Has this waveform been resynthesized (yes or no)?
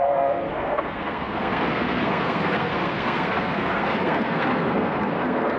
yes